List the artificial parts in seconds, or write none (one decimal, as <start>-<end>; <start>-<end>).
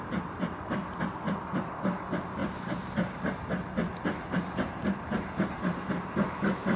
none